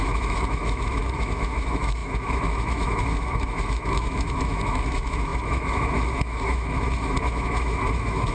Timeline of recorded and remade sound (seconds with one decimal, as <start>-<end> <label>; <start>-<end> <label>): 0.0-8.3 remade